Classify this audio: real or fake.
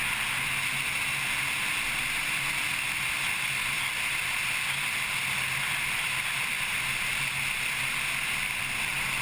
real